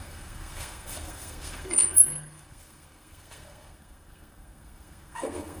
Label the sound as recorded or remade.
remade